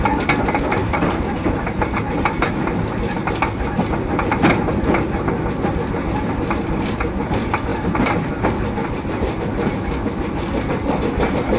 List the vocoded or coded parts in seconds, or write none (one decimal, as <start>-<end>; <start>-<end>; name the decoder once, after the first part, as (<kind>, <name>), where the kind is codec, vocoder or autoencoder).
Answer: 0.8-1.6 (vocoder, BigVGAN v2); 7.7-8.3